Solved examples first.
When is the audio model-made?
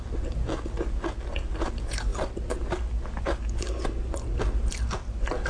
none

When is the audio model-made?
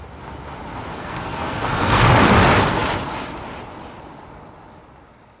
0.9-2.1 (codec, SNAC)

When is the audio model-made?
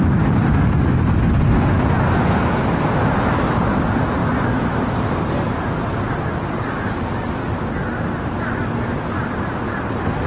none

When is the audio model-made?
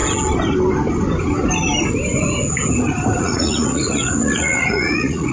3.2-5.3 (vocoder, Vocos)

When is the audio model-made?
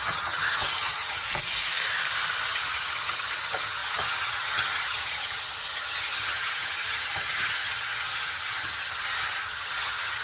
0.0-1.2 (vocoder, HiFi-GAN); 2.5-10.2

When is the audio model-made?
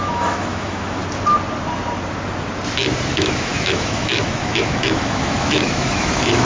0.0-1.0 (autoencoder, DAC-VAE); 3.1-6.5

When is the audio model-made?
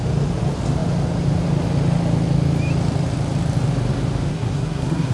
4.3-5.1 (codec, SNAC)